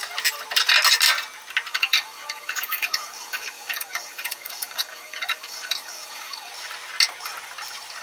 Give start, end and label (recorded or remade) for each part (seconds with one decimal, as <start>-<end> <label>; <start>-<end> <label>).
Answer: 0.0-1.7 recorded; 1.7-6.5 remade; 6.5-8.0 recorded